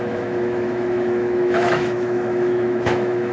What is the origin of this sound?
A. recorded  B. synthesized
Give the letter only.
B